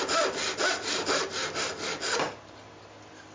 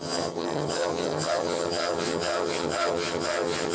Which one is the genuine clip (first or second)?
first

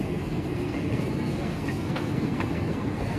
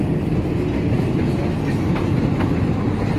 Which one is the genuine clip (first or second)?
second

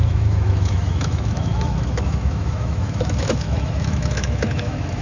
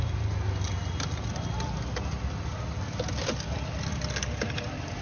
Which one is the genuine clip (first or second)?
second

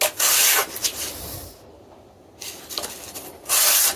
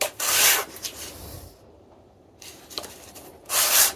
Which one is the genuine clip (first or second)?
first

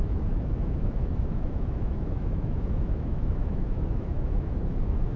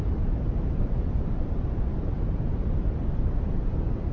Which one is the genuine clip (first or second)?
second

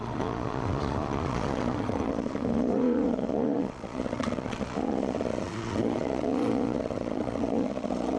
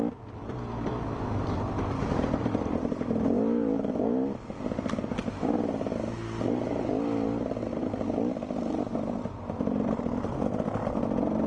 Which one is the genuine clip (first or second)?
second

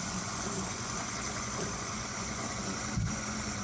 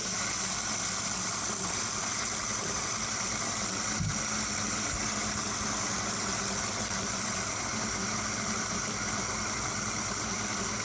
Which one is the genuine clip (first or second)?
second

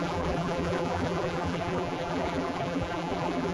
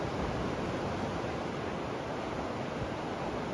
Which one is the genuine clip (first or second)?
second